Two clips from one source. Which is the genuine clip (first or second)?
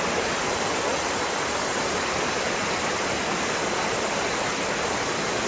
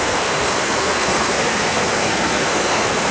first